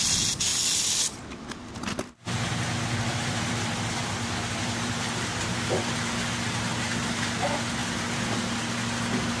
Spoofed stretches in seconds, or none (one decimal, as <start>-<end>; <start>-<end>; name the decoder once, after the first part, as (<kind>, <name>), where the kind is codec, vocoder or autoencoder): 3.1-5.7 (vocoder, BigVGAN v2)